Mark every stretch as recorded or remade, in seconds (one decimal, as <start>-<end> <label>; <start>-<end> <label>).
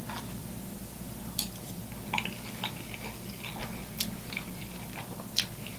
0.0-0.4 recorded; 0.4-1.2 remade; 1.2-5.8 recorded